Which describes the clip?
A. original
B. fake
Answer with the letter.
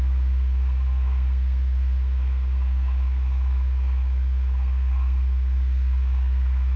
B